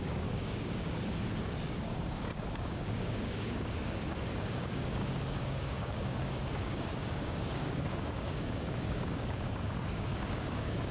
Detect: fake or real fake